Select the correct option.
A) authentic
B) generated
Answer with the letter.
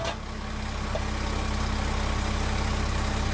A